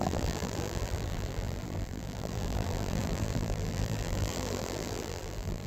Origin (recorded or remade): remade